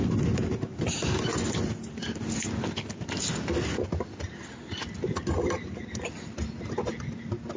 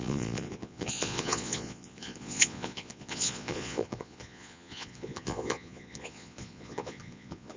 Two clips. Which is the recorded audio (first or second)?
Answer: first